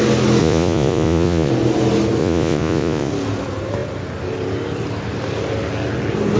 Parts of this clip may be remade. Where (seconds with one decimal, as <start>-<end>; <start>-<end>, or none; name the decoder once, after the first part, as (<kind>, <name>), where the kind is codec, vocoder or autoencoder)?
0.4-1.5 (vocoder, Vocos); 2.2-3.1